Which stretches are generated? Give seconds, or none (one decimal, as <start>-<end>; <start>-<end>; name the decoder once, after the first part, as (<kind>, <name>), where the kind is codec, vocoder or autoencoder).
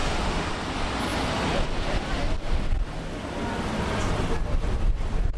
0.0-0.5 (autoencoder, DAC-VAE)